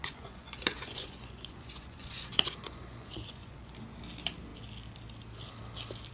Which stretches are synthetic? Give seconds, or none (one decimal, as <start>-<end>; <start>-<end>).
0.0-3.7